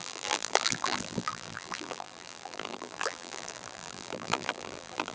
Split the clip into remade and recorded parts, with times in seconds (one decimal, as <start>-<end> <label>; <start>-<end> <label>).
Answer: 0.0-5.1 remade